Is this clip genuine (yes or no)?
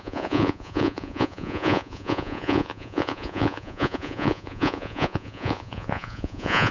no